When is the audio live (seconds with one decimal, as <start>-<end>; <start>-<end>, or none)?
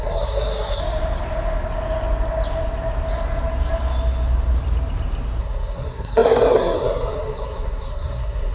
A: 0.8-5.4